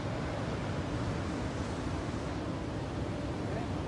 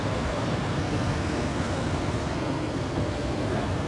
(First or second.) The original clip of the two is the first